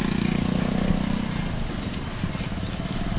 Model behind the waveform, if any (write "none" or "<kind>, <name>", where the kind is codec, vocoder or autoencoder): none